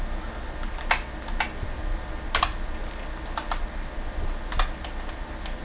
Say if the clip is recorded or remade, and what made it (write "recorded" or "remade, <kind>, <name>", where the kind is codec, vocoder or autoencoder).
recorded